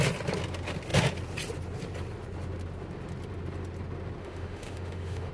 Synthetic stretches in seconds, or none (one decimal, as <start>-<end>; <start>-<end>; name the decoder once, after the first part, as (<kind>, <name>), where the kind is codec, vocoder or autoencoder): 4.2-5.3 (autoencoder, DAC-VAE)